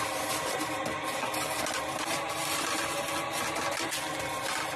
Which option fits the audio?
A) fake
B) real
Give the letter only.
B